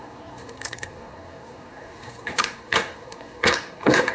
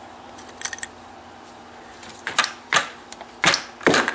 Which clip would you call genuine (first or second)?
second